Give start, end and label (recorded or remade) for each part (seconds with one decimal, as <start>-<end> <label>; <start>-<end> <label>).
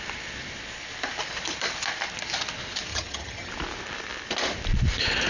0.0-2.9 recorded; 2.9-3.5 remade; 3.5-5.3 recorded